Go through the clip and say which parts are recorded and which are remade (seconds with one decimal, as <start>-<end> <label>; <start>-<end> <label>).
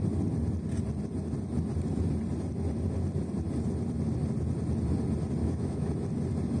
0.0-5.4 recorded; 5.4-5.9 remade; 5.9-6.6 recorded